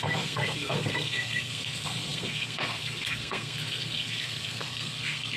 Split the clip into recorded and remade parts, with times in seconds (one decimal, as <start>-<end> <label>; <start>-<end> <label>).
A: 0.0-5.4 remade